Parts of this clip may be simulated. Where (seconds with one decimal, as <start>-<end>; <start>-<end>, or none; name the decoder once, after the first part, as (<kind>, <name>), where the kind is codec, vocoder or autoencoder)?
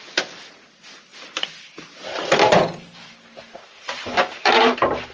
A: none